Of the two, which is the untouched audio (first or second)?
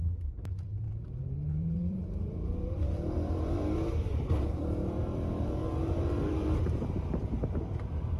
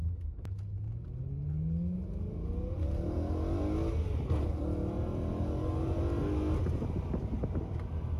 second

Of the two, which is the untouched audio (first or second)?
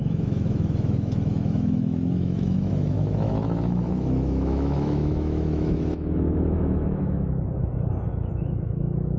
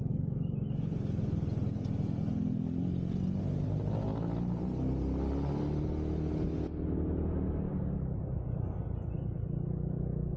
second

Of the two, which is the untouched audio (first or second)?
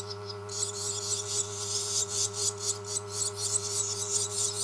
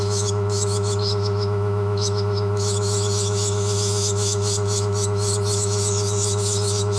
first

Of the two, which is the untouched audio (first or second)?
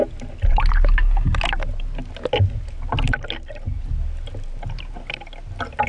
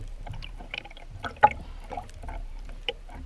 first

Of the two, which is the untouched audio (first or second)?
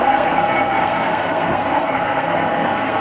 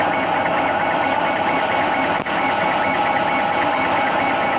second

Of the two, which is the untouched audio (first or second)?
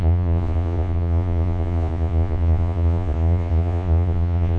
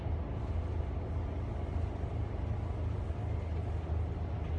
second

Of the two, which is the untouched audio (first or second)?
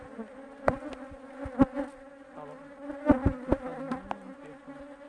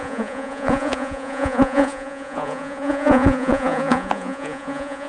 first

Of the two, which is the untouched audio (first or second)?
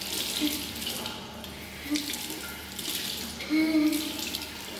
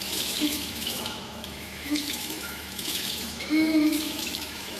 first